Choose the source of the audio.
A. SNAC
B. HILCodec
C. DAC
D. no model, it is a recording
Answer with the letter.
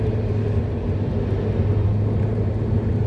D